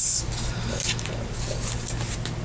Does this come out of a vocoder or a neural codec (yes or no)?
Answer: no